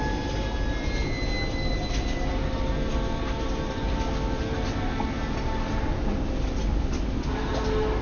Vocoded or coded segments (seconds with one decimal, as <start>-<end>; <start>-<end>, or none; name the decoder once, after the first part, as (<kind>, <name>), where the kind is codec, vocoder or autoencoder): none